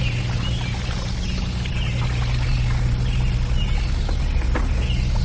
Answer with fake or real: real